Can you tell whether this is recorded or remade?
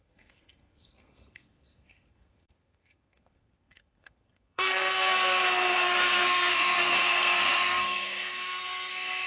remade